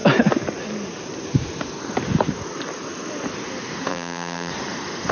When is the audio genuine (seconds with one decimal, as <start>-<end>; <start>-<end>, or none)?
0.0-3.9; 4.5-5.1